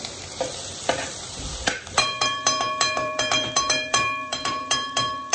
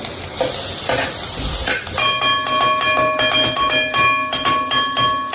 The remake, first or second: first